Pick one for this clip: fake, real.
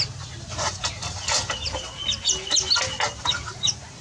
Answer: real